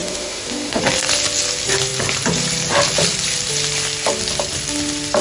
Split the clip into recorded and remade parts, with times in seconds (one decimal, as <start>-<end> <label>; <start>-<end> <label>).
0.0-0.8 remade; 0.8-5.2 recorded